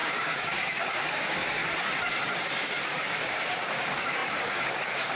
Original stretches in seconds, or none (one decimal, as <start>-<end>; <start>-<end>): 1.6-2.2